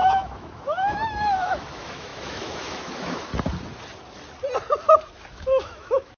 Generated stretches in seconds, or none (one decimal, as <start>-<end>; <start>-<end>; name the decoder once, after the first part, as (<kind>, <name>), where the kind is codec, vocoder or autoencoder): 0.0-3.3 (autoencoder, DAC-VAE); 5.3-6.2